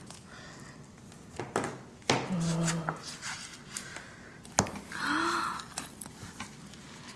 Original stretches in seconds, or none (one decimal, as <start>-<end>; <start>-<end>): 0.0-7.2